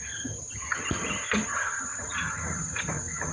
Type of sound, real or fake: fake